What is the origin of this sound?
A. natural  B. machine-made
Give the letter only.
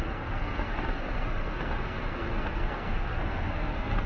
B